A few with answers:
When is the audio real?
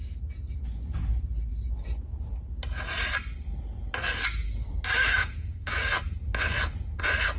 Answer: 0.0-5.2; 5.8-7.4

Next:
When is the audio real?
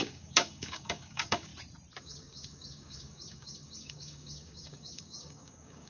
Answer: 1.5-2.0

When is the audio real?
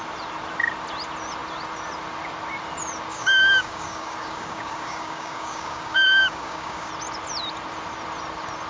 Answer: 0.0-3.1; 6.9-8.7